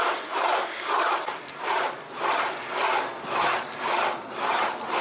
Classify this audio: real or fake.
real